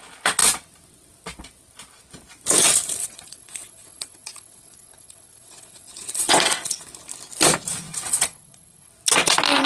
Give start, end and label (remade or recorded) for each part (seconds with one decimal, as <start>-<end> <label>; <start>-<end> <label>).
0.0-3.0 recorded; 3.0-6.8 remade; 6.8-7.9 recorded; 7.9-8.9 remade; 8.9-9.7 recorded